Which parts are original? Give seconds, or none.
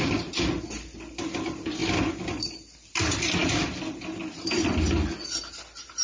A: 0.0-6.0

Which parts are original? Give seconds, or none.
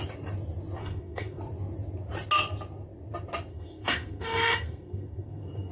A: 0.0-0.8; 1.4-3.5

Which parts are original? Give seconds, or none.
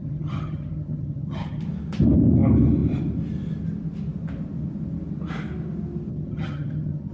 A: 1.6-6.1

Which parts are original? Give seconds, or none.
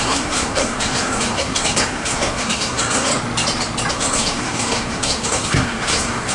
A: 3.1-3.9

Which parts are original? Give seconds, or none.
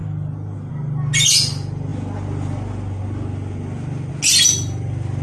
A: 0.0-5.2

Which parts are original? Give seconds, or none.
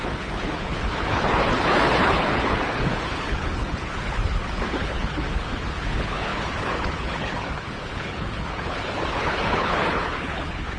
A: none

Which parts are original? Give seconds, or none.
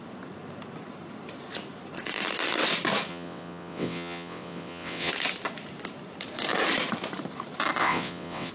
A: 0.0-3.1; 5.1-7.8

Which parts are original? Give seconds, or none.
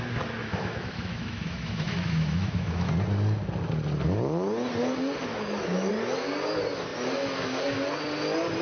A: 0.0-0.4; 2.9-5.3; 5.9-8.6